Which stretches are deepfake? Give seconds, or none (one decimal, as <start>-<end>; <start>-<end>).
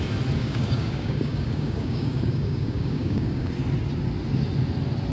0.4-3.5